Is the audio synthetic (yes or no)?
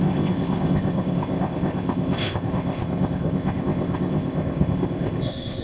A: yes